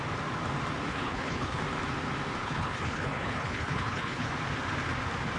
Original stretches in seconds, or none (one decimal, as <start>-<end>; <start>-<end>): 0.0-0.9; 1.6-2.4; 4.3-5.4